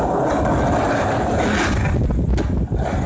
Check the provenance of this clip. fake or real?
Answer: real